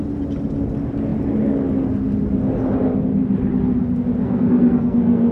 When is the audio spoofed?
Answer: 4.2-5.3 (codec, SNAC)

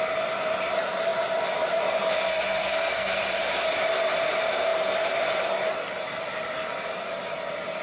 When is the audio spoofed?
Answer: 2.6-3.2 (codec, SNAC)